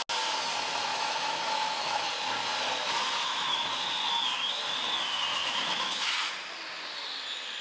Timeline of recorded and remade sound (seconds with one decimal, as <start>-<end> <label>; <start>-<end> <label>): 0.0-0.9 recorded; 0.9-2.1 remade; 2.1-2.8 recorded; 2.8-3.7 remade; 3.7-5.3 recorded; 5.3-6.1 remade; 6.1-7.6 recorded